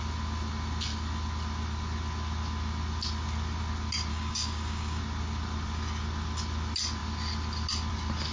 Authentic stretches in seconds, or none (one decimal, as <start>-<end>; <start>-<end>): 0.0-4.1; 5.0-8.3

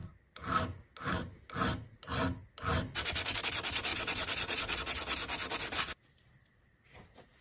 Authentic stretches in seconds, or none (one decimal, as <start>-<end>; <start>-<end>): 0.0-2.9; 3.4-3.9; 4.8-7.4